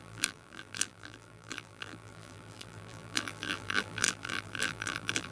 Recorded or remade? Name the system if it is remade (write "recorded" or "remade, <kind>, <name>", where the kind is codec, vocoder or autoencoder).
remade, vocoder, BigVGAN v2